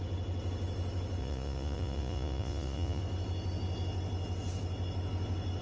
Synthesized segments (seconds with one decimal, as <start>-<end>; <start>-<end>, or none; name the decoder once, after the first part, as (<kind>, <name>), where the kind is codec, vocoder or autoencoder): 1.2-3.0 (vocoder, Vocos)